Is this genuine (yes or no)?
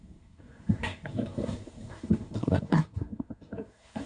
no